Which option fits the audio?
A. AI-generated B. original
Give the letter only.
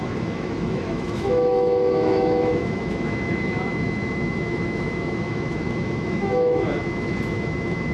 A